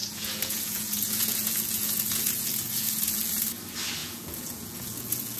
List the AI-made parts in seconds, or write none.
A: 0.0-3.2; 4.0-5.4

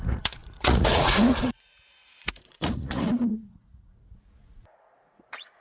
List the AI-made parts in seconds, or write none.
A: 0.0-5.6

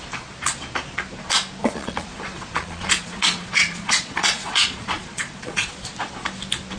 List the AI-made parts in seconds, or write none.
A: 1.6-5.7

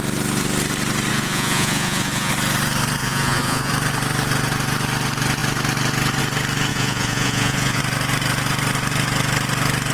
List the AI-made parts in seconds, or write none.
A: 1.1-2.3; 3.0-3.7; 6.7-7.8

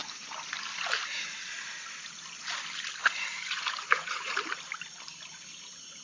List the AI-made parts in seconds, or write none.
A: 3.0-4.3

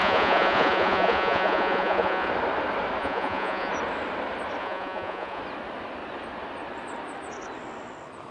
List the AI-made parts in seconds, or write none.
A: 0.0-2.3; 3.0-3.7; 4.6-5.4